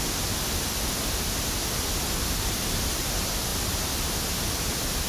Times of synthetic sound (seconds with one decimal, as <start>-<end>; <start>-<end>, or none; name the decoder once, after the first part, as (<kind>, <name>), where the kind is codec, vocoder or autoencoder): none